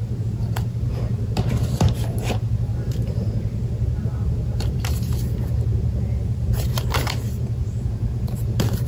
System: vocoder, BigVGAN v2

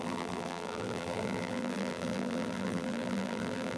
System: vocoder, BigVGAN v2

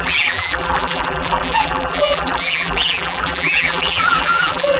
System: vocoder, BigVGAN v2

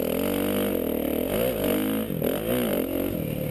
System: none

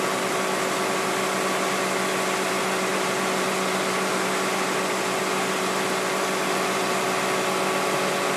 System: none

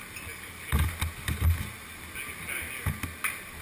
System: none